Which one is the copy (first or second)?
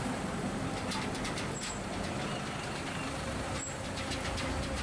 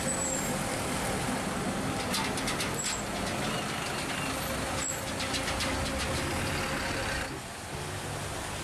first